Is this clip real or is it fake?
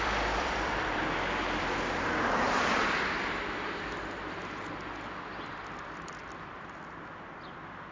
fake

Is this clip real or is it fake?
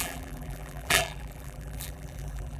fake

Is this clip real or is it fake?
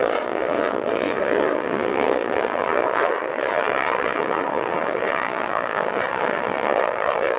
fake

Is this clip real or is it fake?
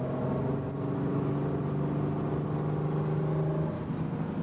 real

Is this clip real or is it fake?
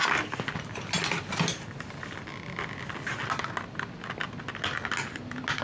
real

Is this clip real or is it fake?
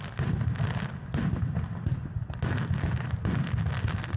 real